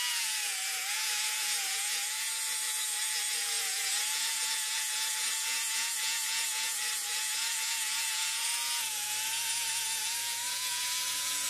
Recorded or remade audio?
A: remade